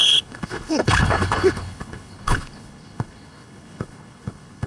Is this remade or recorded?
remade